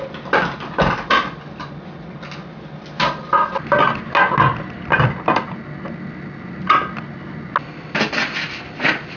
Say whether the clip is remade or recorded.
recorded